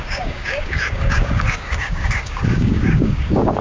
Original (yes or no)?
no